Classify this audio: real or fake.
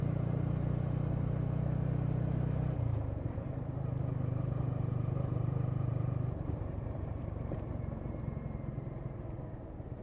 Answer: fake